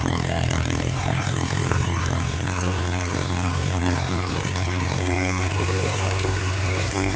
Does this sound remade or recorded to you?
remade